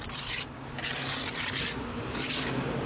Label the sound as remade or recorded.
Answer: recorded